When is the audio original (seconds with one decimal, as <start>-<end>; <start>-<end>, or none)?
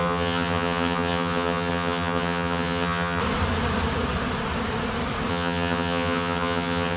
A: 3.2-5.3